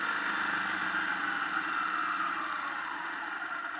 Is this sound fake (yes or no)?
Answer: no